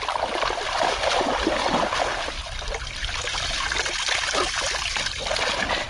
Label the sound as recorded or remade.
recorded